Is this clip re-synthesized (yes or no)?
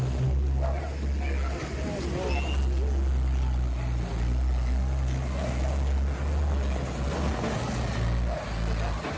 no